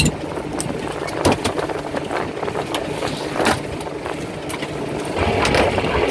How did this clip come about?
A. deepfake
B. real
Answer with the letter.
B